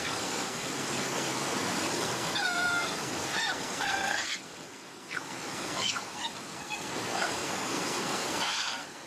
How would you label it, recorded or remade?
remade